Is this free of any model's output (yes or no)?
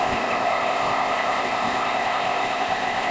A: no